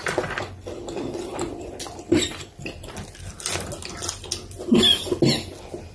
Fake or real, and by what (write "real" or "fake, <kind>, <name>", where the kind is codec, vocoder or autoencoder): real